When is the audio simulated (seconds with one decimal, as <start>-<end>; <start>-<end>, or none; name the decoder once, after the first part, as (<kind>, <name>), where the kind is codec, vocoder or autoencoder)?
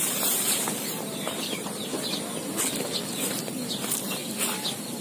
0.0-1.9 (vocoder, BigVGAN v2); 3.0-4.2